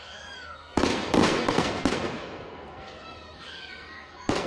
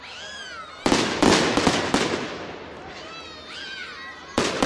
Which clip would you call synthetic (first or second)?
first